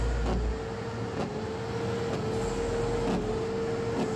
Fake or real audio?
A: real